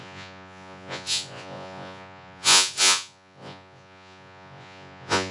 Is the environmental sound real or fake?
fake